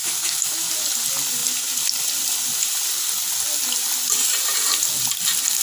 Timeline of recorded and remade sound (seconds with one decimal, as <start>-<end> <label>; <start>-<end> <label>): 0.0-0.7 remade; 0.7-5.6 recorded